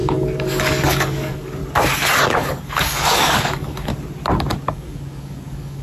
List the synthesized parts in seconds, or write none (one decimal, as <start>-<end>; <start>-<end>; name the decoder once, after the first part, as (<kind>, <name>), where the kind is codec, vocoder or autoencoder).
0.0-1.6 (codec, DAC); 2.3-3.9; 4.7-5.8